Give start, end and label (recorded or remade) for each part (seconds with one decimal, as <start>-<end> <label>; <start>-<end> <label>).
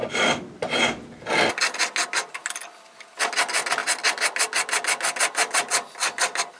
0.0-6.6 recorded